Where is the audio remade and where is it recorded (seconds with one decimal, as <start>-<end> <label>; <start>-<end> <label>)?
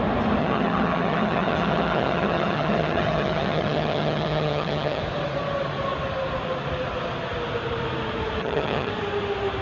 0.0-0.4 recorded; 0.4-5.0 remade; 5.0-8.4 recorded; 8.4-8.9 remade; 8.9-9.6 recorded